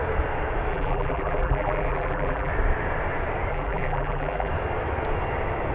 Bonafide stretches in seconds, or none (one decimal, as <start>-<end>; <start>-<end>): 0.0-0.7; 2.5-3.5; 4.5-5.7